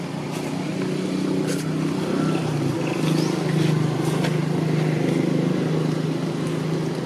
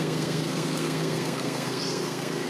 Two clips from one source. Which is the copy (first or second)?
second